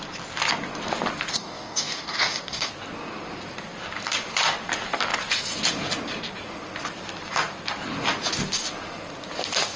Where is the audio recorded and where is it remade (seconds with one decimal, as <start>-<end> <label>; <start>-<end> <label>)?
0.0-1.3 recorded; 1.3-2.7 remade; 2.7-9.8 recorded

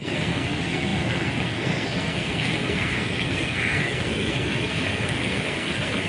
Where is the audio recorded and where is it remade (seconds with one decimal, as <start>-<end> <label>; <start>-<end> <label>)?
0.0-6.1 remade

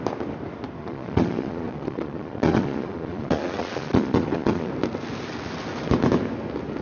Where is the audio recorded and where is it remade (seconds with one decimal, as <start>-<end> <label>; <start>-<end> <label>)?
0.0-0.8 recorded; 0.8-4.7 remade; 4.7-6.8 recorded

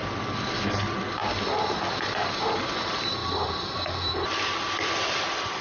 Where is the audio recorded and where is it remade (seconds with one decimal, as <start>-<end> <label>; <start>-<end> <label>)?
0.0-0.7 recorded; 0.7-5.6 remade

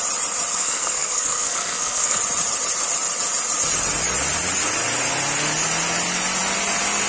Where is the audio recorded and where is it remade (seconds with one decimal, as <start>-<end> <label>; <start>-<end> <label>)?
0.0-0.5 recorded; 0.5-2.2 remade; 2.2-7.1 recorded